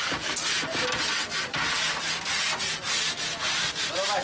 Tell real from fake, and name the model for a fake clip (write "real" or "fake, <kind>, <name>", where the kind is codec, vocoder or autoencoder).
real